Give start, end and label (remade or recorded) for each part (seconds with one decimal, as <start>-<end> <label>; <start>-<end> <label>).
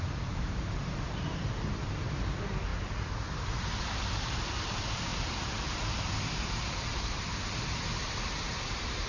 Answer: 0.0-2.7 remade; 2.7-3.6 recorded; 3.6-9.1 remade